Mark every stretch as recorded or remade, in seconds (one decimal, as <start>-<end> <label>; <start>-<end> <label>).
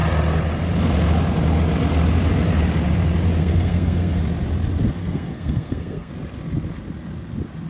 0.0-3.4 recorded; 3.4-4.2 remade; 4.2-5.0 recorded; 5.0-6.1 remade; 6.1-7.7 recorded